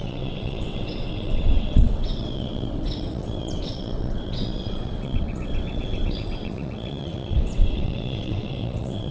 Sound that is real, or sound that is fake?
fake